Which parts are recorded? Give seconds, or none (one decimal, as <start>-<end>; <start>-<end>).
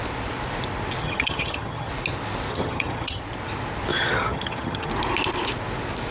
0.0-1.0; 1.9-2.5; 3.2-3.9; 4.9-6.1